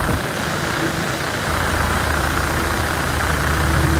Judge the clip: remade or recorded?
remade